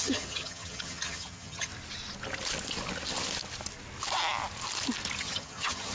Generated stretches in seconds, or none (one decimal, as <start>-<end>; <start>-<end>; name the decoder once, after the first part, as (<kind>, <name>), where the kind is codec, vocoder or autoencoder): 0.0-1.7 (vocoder, HiFi-GAN); 5.2-5.9